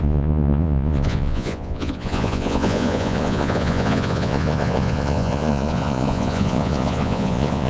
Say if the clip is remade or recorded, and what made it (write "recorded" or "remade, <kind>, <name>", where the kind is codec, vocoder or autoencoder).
remade, vocoder, Vocos